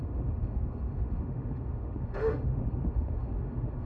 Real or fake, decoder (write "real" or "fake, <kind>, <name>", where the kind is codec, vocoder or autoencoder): fake, autoencoder, DAC-VAE